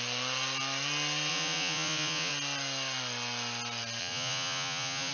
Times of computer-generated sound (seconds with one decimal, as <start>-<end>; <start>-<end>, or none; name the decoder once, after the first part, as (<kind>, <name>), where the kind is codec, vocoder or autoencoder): 1.3-2.3 (vocoder, Vocos); 4.0-5.1